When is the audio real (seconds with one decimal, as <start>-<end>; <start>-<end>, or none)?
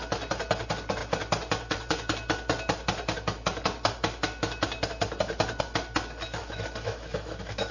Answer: 0.0-6.4